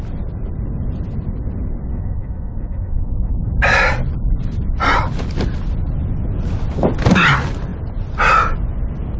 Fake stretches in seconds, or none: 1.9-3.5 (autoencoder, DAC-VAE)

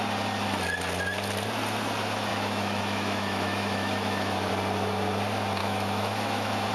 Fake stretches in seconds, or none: 2.3-4.5 (autoencoder, DAC-VAE); 5.6-6.7